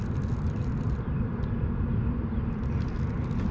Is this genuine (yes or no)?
yes